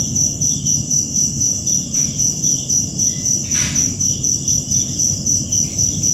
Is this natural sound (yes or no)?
yes